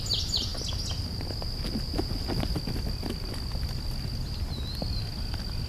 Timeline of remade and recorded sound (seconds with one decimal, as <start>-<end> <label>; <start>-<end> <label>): 0.0-5.7 recorded